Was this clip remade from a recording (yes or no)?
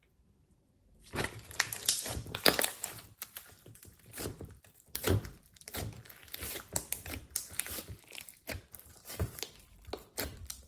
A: yes